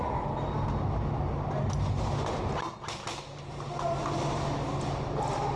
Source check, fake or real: real